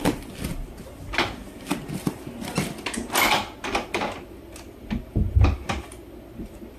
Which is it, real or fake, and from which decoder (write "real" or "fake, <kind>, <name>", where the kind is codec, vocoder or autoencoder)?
real